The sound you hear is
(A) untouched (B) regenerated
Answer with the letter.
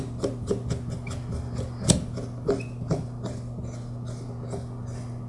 A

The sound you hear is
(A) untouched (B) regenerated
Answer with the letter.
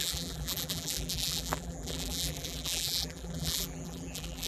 B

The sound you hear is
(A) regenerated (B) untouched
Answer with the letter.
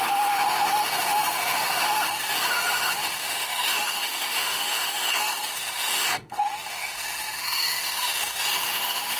A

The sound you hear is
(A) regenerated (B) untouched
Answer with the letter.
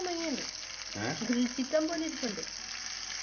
B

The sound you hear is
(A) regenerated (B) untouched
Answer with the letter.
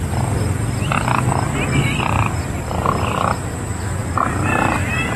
B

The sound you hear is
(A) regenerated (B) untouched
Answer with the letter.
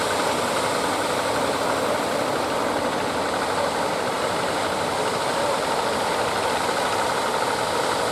B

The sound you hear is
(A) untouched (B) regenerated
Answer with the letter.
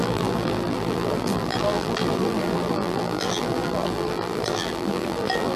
B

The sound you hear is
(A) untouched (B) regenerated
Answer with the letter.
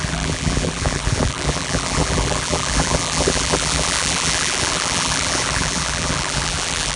B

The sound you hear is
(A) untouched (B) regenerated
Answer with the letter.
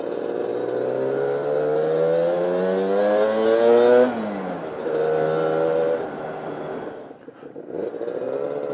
A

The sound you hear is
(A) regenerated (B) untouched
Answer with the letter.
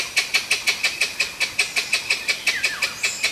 A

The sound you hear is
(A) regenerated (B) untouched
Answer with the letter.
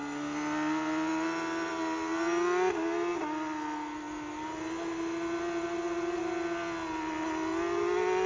B